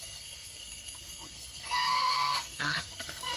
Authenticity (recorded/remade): remade